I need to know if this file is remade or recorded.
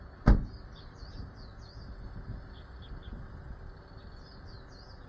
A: recorded